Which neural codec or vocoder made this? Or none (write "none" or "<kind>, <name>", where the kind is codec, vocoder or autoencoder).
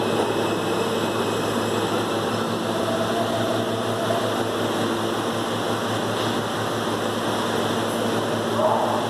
none